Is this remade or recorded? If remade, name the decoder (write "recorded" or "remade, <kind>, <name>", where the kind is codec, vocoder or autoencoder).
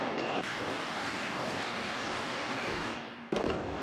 remade, codec, DAC